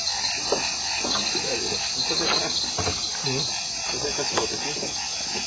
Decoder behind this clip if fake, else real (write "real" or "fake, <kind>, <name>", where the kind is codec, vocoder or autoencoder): real